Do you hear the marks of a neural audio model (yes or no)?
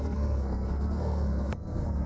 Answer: yes